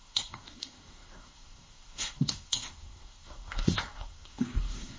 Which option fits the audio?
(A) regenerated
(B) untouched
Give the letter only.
A